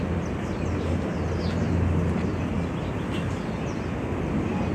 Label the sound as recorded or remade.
recorded